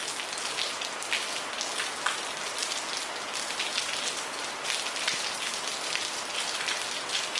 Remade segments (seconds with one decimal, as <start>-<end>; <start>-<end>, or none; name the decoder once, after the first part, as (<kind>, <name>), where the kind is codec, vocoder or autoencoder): none